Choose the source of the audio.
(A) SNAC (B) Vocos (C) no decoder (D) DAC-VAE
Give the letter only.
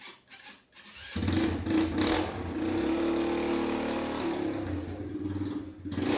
C